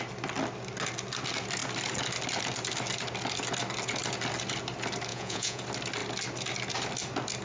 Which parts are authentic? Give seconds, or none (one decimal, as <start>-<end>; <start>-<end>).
0.0-5.1; 5.6-7.4